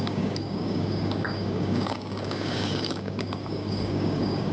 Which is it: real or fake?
fake